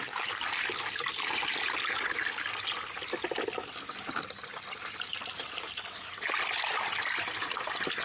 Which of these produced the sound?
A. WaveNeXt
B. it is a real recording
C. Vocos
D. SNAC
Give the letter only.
B